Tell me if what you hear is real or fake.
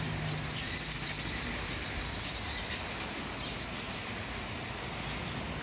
real